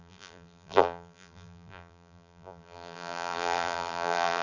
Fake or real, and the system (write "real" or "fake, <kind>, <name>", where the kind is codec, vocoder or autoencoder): fake, vocoder, BigVGAN v2